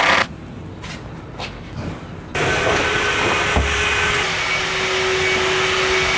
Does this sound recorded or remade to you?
recorded